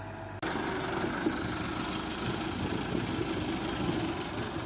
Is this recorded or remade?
recorded